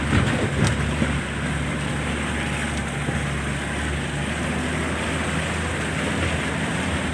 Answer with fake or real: real